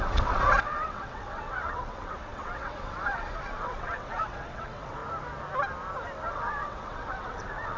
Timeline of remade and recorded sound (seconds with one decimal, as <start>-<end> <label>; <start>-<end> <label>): 0.0-5.0 remade; 5.0-6.3 recorded; 6.3-7.8 remade